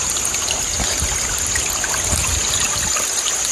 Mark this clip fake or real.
real